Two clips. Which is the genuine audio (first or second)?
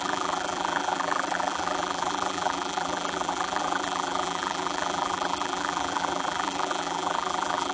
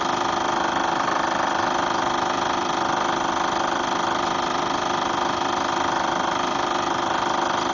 second